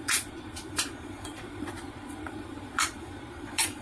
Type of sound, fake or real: fake